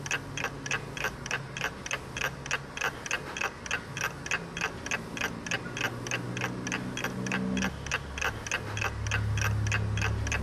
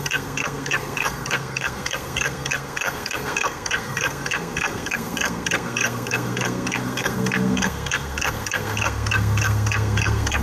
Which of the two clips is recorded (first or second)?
first